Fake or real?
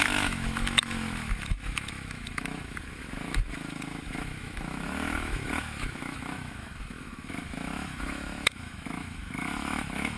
fake